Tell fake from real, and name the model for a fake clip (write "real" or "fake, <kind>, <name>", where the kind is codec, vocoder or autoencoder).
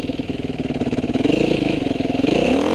fake, autoencoder, DAC-VAE